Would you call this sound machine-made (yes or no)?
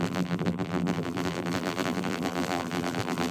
yes